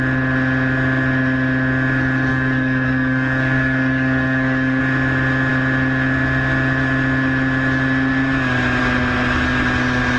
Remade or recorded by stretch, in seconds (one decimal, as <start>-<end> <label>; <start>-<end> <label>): 0.0-2.3 recorded; 2.3-4.8 remade; 4.8-10.2 recorded